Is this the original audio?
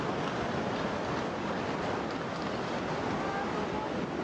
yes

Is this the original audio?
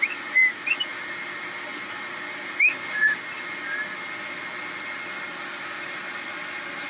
yes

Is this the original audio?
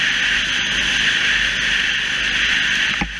yes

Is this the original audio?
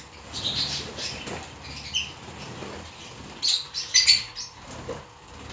yes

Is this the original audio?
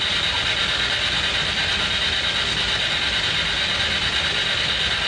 yes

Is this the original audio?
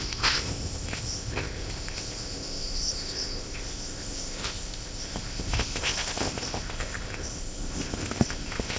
no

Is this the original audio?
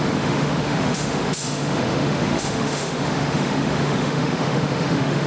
no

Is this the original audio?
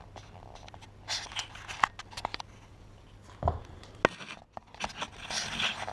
yes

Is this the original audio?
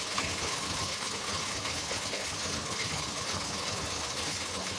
no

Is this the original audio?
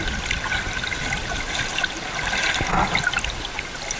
yes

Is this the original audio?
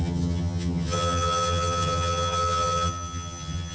no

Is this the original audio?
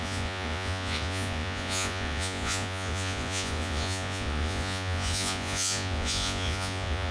no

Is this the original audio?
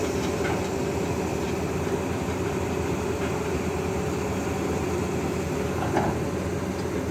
yes